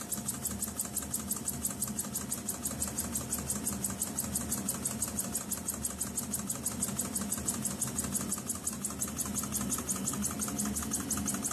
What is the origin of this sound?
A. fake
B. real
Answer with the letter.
B